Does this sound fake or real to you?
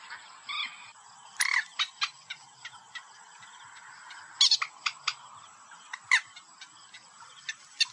real